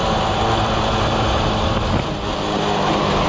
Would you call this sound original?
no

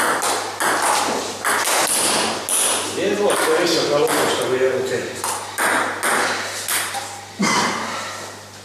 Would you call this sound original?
yes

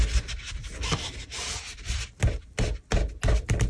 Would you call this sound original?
yes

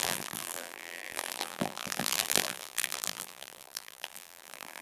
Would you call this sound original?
no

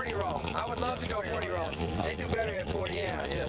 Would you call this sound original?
no